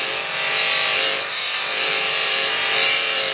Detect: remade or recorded remade